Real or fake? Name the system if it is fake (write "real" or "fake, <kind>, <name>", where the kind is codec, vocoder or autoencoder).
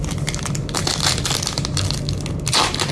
real